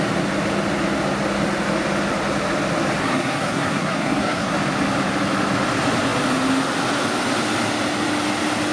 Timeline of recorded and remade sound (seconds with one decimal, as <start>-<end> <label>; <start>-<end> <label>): 0.0-3.0 recorded; 3.0-4.5 remade; 4.5-8.7 recorded